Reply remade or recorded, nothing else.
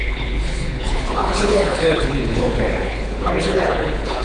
remade